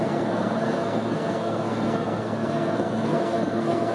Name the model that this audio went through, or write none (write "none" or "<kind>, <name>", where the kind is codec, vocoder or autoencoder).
codec, SNAC